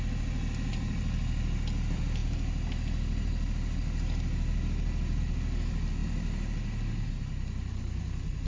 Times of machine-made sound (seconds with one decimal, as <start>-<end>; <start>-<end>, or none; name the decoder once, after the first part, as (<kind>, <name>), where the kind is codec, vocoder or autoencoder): none